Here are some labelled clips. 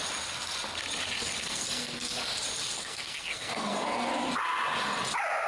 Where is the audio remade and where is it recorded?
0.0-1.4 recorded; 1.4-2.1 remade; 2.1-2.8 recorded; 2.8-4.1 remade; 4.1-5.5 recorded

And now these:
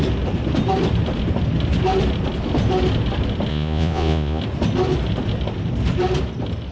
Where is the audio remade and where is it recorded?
0.0-3.5 recorded; 3.5-4.4 remade; 4.4-6.7 recorded

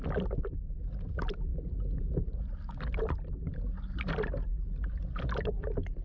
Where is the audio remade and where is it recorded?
0.0-6.0 recorded

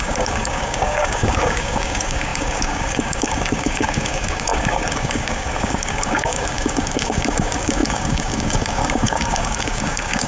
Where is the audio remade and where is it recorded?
0.0-10.3 remade

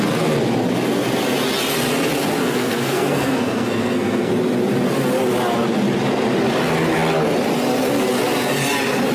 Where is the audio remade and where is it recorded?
0.0-2.4 recorded; 2.4-4.3 remade; 4.3-9.1 recorded

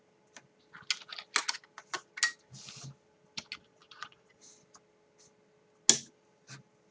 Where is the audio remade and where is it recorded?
0.0-3.6 recorded; 3.6-4.4 remade; 4.4-6.9 recorded

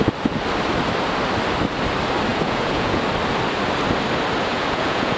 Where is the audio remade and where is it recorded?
0.0-2.3 recorded; 2.3-3.0 remade; 3.0-4.5 recorded; 4.5-5.2 remade